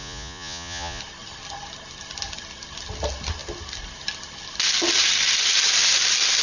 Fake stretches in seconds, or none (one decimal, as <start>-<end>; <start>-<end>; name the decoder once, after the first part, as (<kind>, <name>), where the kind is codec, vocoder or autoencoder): 0.0-1.0 (vocoder, Vocos)